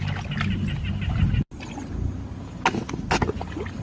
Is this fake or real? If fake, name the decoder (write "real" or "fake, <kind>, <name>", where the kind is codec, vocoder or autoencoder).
real